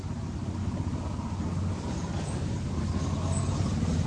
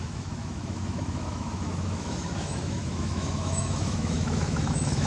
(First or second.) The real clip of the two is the first